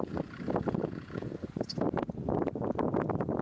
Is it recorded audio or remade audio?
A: recorded